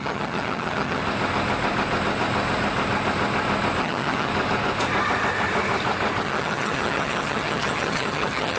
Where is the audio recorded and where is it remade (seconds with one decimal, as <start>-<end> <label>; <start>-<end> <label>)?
0.0-1.0 remade; 1.0-3.8 recorded; 3.8-4.3 remade; 4.3-6.2 recorded; 6.2-8.6 remade

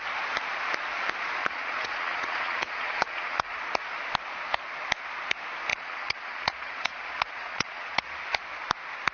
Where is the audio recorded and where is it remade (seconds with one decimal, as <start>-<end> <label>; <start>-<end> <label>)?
0.0-1.4 recorded; 1.4-3.6 remade; 3.6-5.7 recorded; 5.7-8.1 remade; 8.1-9.1 recorded

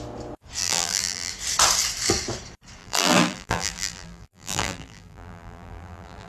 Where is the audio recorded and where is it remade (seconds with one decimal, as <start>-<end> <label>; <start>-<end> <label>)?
0.0-0.6 recorded; 0.6-1.3 remade; 1.3-2.8 recorded; 2.8-6.3 remade